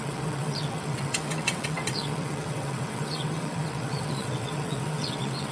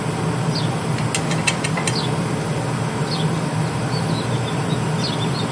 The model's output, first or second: first